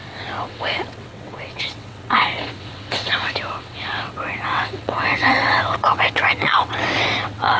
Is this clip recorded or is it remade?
remade